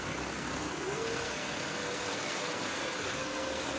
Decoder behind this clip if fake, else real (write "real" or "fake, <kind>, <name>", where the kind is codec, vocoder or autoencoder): fake, codec, SNAC